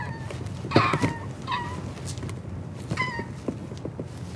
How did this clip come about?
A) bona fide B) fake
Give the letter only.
A